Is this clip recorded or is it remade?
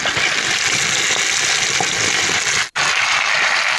recorded